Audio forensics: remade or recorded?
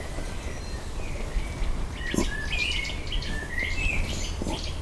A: recorded